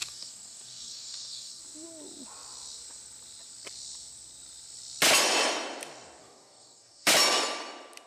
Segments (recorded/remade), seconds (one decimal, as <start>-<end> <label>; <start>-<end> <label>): 0.0-1.6 remade; 1.6-6.2 recorded; 6.2-7.1 remade; 7.1-8.1 recorded